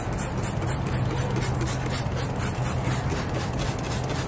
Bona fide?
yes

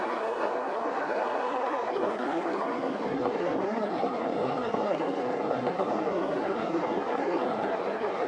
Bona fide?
no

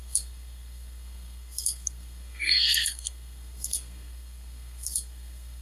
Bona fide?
no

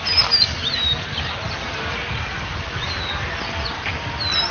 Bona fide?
yes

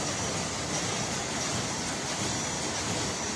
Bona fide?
yes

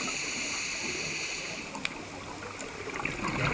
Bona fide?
yes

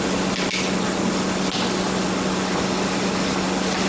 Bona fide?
yes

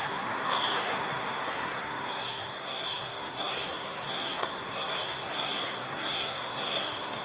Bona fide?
no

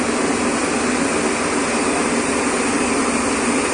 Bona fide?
yes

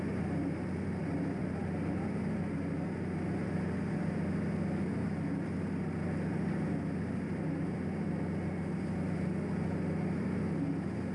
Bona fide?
yes